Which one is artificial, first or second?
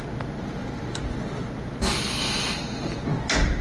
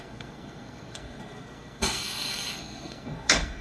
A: second